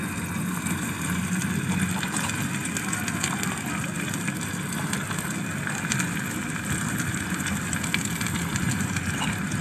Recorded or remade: recorded